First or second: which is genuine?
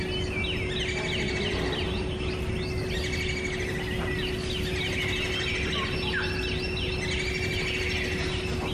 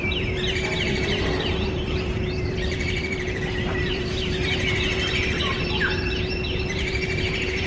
first